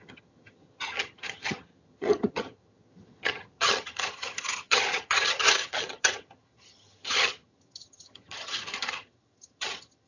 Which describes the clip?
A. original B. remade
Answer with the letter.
B